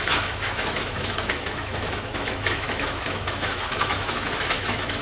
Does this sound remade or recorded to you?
remade